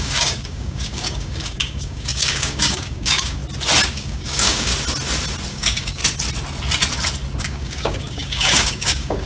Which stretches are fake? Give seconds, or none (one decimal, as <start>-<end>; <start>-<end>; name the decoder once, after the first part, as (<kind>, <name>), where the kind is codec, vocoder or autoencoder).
0.0-3.4 (codec, DAC); 3.9-4.7; 5.5-6.0; 7.4-9.3